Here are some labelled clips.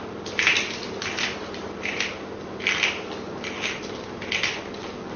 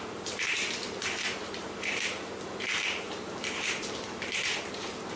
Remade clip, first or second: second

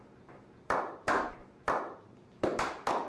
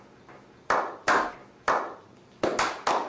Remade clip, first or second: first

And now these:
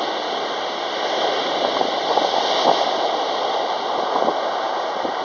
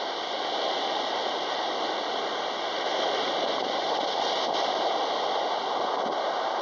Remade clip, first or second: second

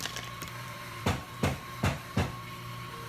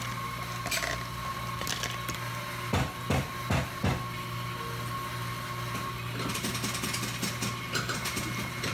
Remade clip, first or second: first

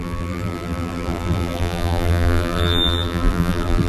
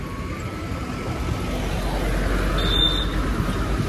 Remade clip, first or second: first